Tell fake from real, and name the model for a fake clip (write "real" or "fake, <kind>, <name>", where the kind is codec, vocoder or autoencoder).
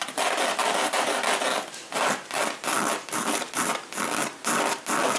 real